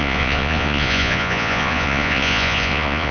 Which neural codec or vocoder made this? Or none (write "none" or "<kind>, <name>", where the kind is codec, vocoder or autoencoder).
vocoder, Vocos